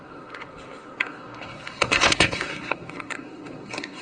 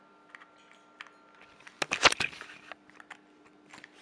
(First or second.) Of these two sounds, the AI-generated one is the first